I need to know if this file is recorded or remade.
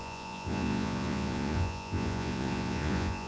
remade